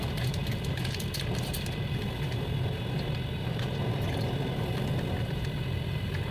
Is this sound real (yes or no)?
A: no